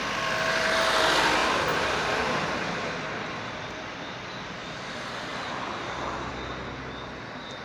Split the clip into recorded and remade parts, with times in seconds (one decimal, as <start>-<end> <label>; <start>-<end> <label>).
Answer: 0.0-1.4 recorded; 1.4-2.1 remade; 2.1-7.6 recorded